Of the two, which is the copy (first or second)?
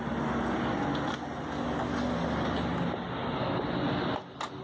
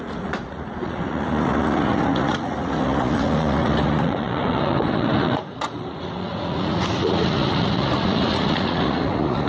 second